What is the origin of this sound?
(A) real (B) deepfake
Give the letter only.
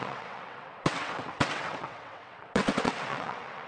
B